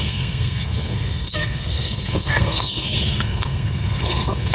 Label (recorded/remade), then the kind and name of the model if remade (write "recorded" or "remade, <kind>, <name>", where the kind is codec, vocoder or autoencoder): remade, codec, SNAC